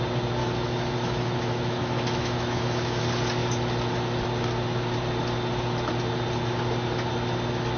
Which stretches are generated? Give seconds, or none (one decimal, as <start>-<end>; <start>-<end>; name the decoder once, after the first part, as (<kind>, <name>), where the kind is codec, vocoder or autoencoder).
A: 0.4-3.0 (autoencoder, DAC-VAE)

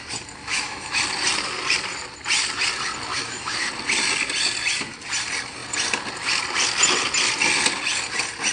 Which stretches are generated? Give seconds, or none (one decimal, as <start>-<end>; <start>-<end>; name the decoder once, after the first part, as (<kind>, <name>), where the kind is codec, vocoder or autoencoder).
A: 0.4-1.0 (autoencoder, DAC-VAE); 3.1-3.7

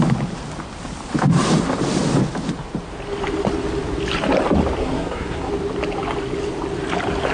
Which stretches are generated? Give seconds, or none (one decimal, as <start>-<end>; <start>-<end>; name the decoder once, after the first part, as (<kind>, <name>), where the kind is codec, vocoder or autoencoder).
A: 4.8-5.5 (codec, SNAC)

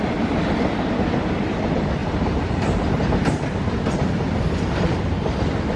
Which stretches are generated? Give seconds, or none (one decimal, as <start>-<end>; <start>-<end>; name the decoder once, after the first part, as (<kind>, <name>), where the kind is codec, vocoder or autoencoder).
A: 2.0-4.4 (vocoder, BigVGAN v2)

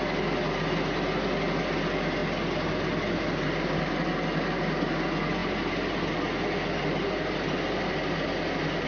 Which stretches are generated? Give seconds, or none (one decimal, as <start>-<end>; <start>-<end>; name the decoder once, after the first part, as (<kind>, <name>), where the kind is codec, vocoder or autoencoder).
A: none